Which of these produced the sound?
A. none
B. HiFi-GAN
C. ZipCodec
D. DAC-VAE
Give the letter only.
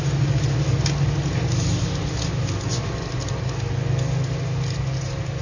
A